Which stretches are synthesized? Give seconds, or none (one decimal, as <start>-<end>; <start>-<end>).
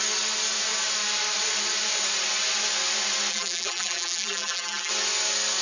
3.3-4.9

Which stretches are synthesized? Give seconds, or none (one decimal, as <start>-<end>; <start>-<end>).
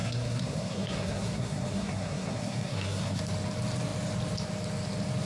0.0-3.2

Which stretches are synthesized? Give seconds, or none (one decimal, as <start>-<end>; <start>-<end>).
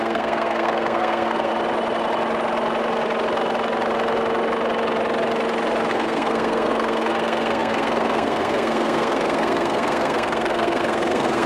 0.0-1.5; 5.9-11.5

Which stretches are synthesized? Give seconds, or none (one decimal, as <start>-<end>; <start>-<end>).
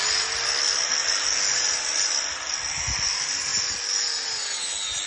none